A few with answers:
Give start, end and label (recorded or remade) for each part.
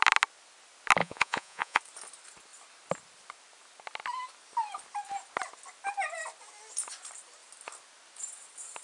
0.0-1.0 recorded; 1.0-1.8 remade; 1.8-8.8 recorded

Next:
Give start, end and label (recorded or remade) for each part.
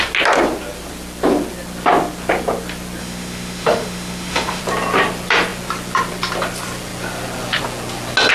0.0-3.0 recorded; 3.0-4.6 remade; 4.6-8.3 recorded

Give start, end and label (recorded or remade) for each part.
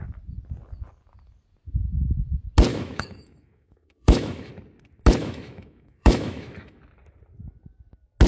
0.0-2.7 recorded; 2.7-4.5 remade; 4.5-5.2 recorded; 5.2-6.8 remade; 6.8-8.3 recorded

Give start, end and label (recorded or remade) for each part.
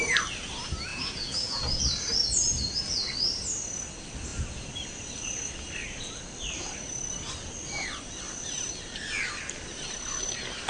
0.0-0.9 recorded; 0.9-1.8 remade; 1.8-10.7 recorded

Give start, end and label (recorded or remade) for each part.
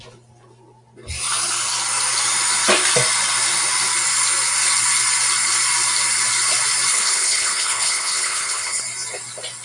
0.0-6.9 recorded; 6.9-8.8 remade; 8.8-9.6 recorded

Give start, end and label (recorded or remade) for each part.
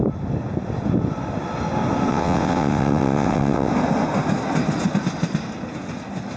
0.0-2.1 recorded; 2.1-3.7 remade; 3.7-6.4 recorded